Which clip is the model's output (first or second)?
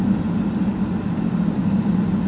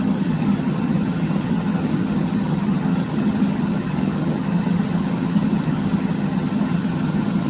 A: second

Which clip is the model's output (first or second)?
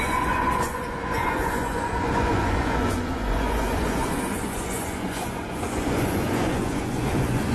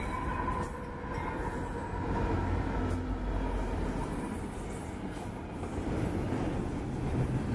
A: first